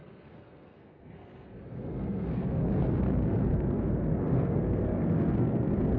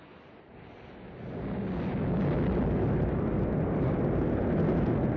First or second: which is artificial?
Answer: first